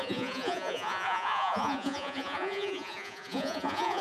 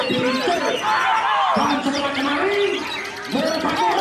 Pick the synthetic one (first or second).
first